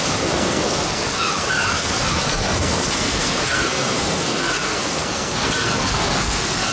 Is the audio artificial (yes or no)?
yes